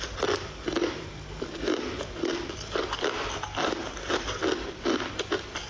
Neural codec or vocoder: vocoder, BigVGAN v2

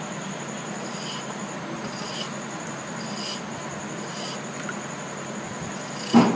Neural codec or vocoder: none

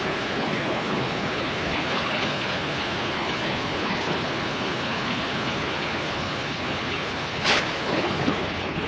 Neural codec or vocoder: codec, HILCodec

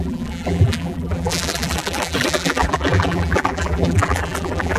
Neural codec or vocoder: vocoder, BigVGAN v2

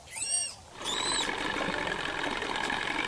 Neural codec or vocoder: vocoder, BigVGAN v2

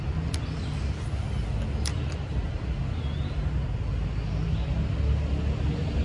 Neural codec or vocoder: none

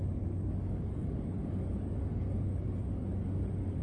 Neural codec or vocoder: codec, DAC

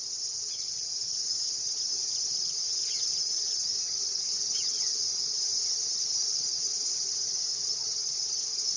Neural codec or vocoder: vocoder, HiFi-GAN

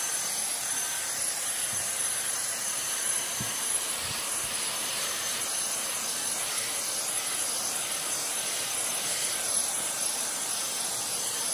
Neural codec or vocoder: vocoder, BigVGAN v2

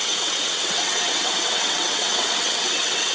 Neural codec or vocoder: vocoder, WaveNeXt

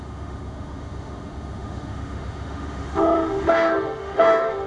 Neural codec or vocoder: autoencoder, DAC-VAE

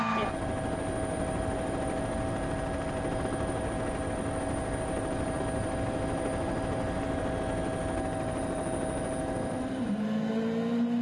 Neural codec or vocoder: none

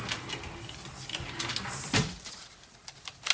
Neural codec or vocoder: none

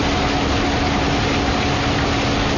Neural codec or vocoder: none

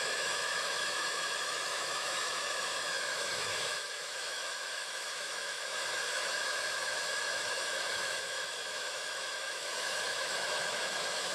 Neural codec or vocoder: autoencoder, DAC-VAE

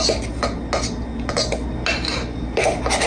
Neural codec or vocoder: none